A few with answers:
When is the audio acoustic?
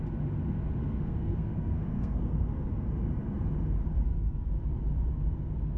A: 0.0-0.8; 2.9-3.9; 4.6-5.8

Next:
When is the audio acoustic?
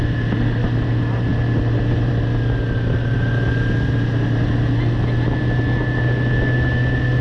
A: 0.0-7.2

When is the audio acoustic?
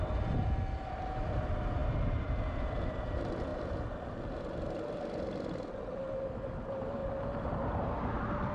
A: 0.0-8.5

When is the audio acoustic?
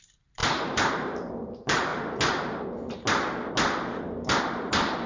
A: 1.9-4.4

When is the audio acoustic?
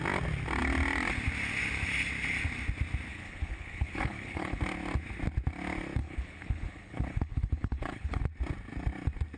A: 0.0-3.1; 4.6-6.0; 8.2-9.4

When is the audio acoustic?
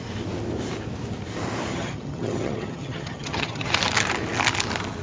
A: 0.0-1.7; 3.7-5.0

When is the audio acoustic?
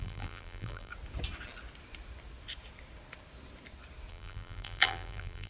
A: 0.9-4.1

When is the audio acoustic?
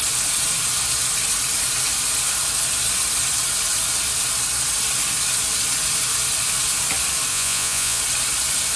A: 0.0-7.3; 8.0-8.8